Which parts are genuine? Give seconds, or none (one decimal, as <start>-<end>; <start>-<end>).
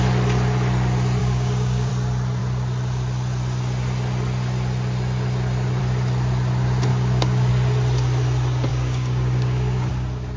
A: 0.0-1.2; 1.9-6.9; 7.5-8.7; 9.9-10.4